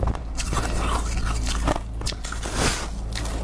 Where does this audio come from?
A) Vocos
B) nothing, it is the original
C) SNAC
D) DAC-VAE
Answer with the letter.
B